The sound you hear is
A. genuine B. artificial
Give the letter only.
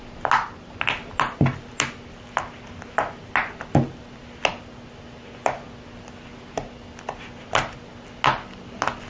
A